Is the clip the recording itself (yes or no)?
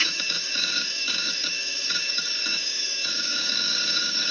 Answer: no